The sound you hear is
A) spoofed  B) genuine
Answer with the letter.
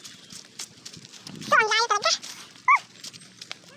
B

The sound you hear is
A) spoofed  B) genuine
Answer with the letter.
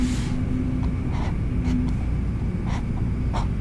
B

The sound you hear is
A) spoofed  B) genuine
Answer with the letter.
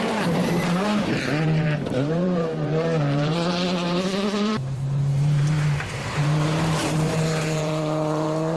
A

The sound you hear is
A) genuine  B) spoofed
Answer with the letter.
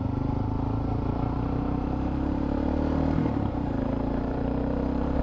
B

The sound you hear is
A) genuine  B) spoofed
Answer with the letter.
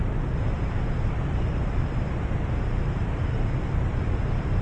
B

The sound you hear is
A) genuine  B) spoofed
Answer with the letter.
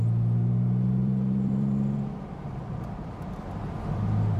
B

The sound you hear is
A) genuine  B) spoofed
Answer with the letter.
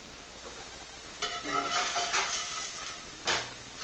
A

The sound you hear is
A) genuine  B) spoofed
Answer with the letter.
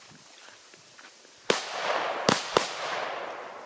A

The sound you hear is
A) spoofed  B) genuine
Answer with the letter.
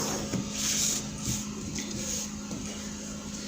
B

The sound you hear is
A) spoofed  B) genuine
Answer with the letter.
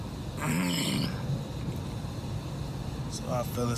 B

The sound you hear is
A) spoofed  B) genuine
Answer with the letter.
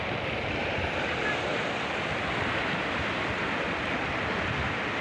B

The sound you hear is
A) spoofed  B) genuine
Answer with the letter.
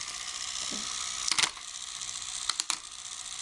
B